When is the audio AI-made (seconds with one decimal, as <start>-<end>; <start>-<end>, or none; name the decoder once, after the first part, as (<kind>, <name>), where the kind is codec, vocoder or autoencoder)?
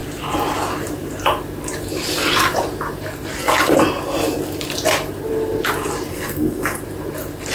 6.1-6.8 (codec, SNAC)